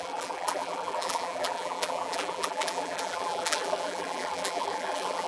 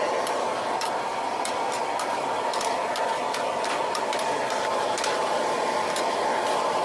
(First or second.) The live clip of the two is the second